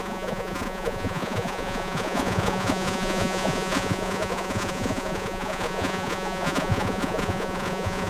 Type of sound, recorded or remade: remade